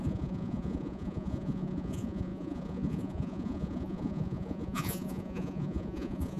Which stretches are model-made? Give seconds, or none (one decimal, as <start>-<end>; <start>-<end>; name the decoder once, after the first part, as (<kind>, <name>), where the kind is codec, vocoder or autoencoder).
0.0-6.4 (vocoder, Vocos)